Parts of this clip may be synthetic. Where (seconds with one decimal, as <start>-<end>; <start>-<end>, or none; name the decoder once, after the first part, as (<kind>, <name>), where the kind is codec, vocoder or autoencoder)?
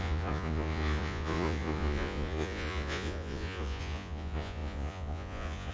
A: 0.0-5.7 (vocoder, Vocos)